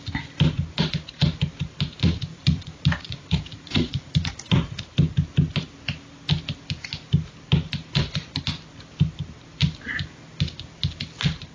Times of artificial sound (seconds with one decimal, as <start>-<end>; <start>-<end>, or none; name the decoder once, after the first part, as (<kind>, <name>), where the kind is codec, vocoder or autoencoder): 2.3-4.8 (vocoder, Vocos)